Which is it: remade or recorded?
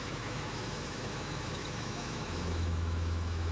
remade